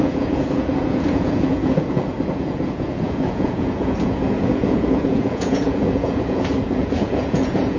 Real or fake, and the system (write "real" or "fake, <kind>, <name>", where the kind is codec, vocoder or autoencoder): fake, vocoder, Vocos